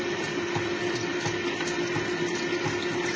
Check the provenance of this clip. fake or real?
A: real